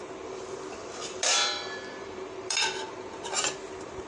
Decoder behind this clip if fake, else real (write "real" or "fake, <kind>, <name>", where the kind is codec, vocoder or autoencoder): fake, vocoder, BigVGAN v2